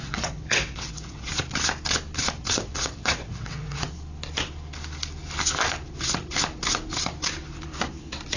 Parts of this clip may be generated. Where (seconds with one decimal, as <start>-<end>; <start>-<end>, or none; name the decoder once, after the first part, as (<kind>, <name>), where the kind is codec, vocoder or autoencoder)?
0.0-1.3 (vocoder, WaveNeXt); 2.4-3.9